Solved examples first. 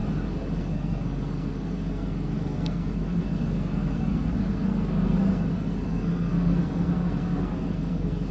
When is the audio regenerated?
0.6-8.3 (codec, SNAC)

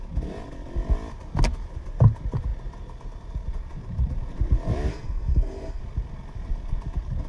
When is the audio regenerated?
4.9-5.8 (codec, SNAC)